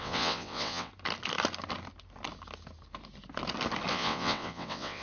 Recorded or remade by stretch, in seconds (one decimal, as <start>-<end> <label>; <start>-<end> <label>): 0.0-0.9 remade; 0.9-3.9 recorded; 3.9-5.0 remade

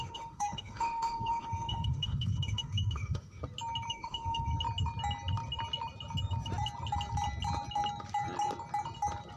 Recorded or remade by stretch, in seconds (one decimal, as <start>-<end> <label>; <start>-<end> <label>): 0.0-3.4 remade; 3.4-3.9 recorded; 3.9-4.5 remade; 4.5-9.4 recorded